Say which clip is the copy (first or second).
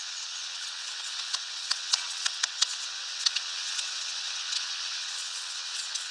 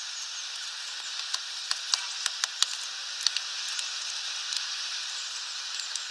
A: first